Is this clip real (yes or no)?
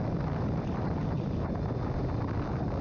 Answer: yes